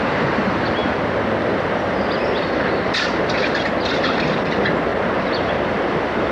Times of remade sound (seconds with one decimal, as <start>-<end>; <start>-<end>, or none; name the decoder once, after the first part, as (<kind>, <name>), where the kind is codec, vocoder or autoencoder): 0.0-6.3 (vocoder, BigVGAN v2)